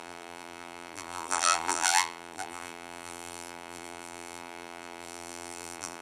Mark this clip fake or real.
fake